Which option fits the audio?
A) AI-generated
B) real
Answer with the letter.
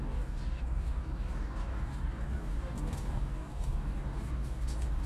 A